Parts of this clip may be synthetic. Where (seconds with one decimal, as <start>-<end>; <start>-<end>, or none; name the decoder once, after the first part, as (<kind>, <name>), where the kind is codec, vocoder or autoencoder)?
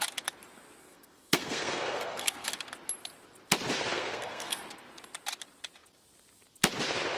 0.8-2.5 (codec, SNAC); 3.9-4.6